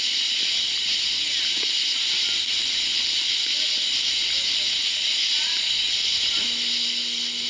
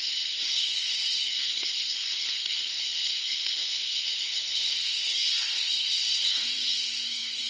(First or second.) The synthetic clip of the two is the second